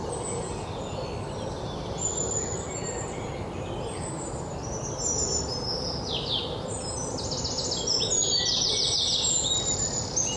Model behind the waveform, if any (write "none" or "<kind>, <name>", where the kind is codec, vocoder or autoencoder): none